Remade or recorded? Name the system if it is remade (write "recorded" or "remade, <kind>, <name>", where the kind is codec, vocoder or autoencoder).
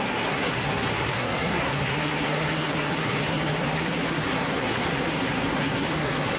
remade, codec, SNAC